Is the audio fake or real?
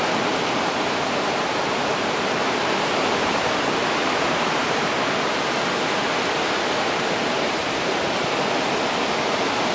real